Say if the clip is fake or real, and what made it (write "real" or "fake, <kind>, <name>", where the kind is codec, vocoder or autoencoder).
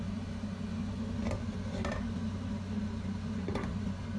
real